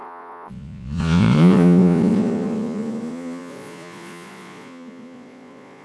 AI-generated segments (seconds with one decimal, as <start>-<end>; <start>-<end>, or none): 0.0-5.8